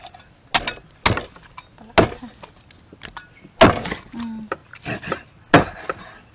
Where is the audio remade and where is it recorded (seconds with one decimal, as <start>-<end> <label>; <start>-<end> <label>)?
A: 0.0-6.3 recorded